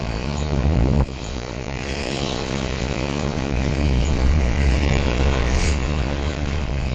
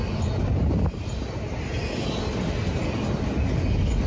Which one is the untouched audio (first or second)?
second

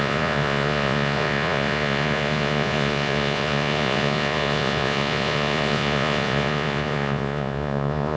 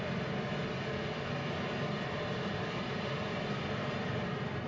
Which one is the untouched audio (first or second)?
second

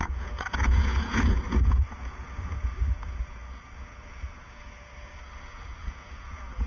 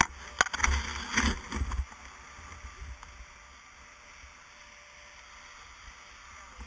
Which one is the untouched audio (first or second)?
second